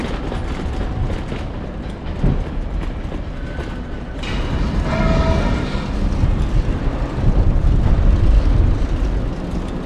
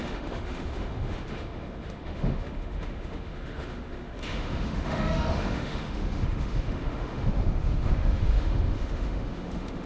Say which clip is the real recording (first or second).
first